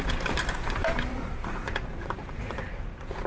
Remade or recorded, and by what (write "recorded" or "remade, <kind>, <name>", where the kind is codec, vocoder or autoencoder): remade, vocoder, BigVGAN v2